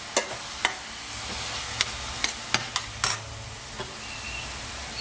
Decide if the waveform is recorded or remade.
recorded